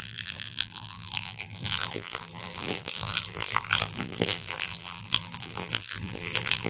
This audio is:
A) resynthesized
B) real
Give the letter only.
A